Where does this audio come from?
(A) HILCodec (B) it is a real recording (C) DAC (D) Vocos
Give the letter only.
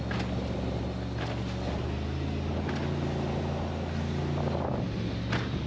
B